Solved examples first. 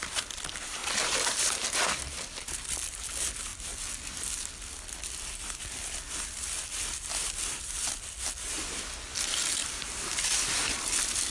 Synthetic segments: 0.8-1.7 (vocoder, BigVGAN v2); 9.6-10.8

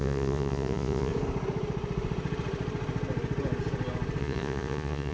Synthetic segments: 0.0-1.1 (vocoder, Vocos); 4.2-5.1

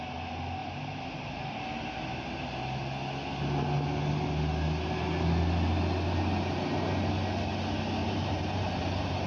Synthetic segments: 0.6-1.4 (vocoder, BigVGAN v2); 8.0-9.3

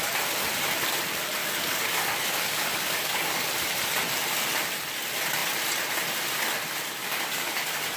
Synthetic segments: 1.4-3.5 (codec, DAC); 7.0-7.5

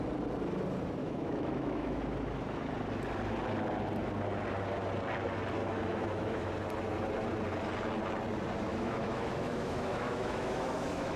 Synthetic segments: 1.0-2.0 (autoencoder, DAC-VAE); 5.6-6.5; 8.7-11.2

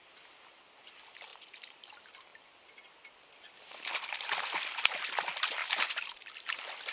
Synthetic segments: 1.3-1.9 (vocoder, BigVGAN v2); 5.6-6.3